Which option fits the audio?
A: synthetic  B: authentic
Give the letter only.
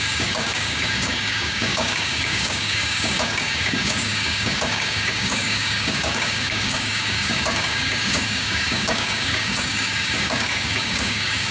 A